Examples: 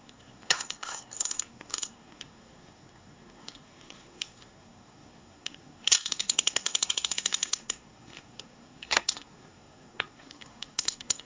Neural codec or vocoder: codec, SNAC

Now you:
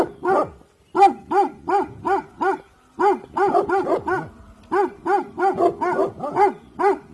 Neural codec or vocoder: none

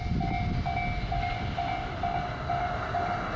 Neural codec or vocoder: none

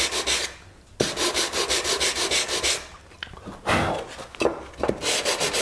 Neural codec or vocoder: none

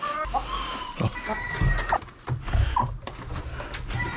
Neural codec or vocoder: none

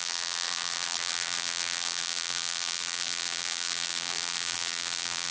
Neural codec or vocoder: vocoder, BigVGAN v2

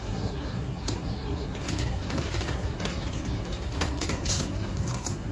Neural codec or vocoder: codec, SNAC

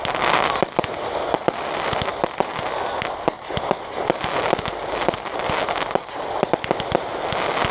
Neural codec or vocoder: none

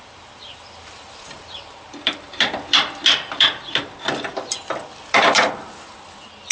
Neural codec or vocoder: vocoder, BigVGAN v2